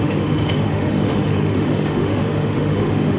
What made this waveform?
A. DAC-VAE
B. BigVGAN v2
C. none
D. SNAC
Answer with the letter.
A